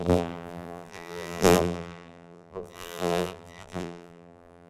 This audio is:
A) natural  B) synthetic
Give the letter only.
B